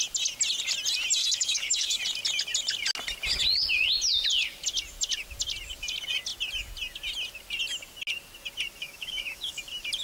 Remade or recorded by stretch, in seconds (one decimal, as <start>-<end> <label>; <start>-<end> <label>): 0.0-1.2 recorded; 1.2-2.0 remade; 2.0-8.8 recorded; 8.8-9.6 remade; 9.6-10.0 recorded